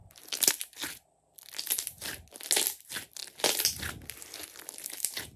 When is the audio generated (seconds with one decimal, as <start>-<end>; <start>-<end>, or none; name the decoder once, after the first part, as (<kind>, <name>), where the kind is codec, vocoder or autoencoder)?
none